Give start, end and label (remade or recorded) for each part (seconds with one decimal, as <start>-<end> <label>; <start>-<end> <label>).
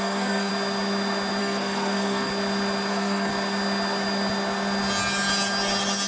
0.0-0.5 remade; 0.5-1.4 recorded; 1.4-2.3 remade; 2.3-2.9 recorded; 2.9-3.3 remade; 3.3-6.1 recorded